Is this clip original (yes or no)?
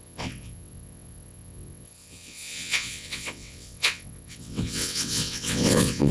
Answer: no